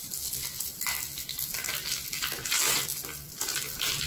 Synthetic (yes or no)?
no